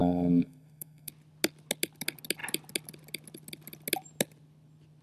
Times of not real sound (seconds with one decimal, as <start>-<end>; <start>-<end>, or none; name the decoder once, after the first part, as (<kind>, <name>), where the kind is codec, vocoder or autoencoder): 0.0-1.1 (codec, SNAC)